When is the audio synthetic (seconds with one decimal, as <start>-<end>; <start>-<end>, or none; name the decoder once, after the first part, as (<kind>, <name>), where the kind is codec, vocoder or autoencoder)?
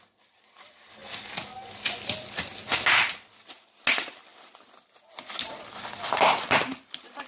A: none